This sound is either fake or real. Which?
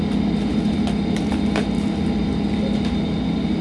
real